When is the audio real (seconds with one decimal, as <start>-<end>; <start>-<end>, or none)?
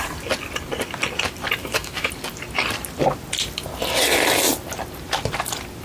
0.0-1.6; 2.1-5.8